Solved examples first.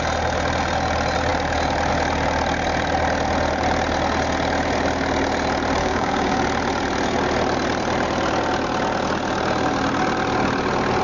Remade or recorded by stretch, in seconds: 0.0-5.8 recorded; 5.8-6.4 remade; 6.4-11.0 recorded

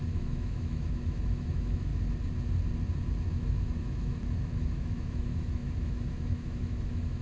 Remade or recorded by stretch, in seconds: 0.0-1.9 remade; 1.9-3.3 recorded; 3.3-7.2 remade

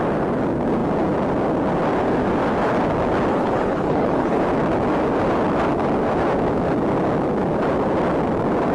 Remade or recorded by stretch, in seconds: 0.0-3.3 recorded; 3.3-4.4 remade; 4.4-8.7 recorded

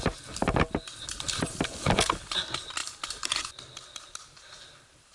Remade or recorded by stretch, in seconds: 0.0-5.1 recorded

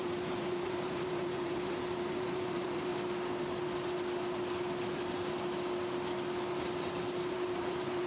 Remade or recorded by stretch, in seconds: 0.0-2.9 remade; 2.9-7.3 recorded; 7.3-8.1 remade